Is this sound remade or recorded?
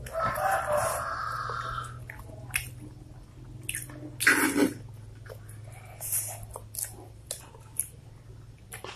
recorded